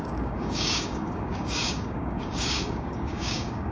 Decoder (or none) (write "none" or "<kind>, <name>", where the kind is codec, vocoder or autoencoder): codec, DAC